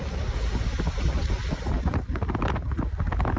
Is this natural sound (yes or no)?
yes